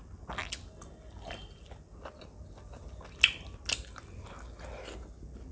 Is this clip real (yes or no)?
yes